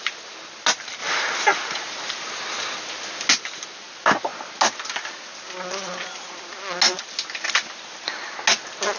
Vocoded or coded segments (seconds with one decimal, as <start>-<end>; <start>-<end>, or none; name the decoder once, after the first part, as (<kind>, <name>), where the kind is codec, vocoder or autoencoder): none